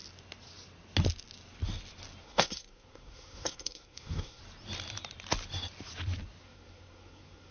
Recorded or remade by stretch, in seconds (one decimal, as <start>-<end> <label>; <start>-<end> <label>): 0.0-2.2 recorded; 2.2-4.4 remade; 4.4-6.4 recorded; 6.4-7.5 remade